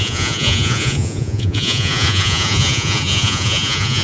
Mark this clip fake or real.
fake